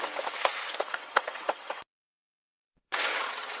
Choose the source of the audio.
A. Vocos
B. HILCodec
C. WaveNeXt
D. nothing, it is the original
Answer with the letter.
C